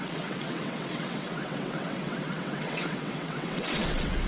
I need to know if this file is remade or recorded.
remade